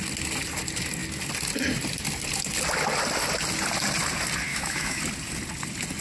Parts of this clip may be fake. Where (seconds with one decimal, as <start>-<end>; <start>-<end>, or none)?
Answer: 4.5-5.0